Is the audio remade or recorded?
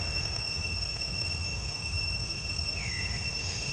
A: remade